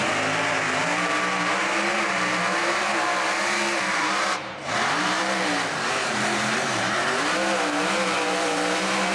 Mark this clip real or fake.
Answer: fake